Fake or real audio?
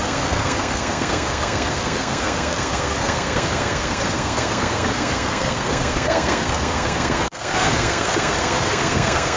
fake